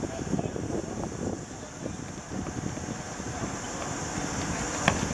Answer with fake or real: real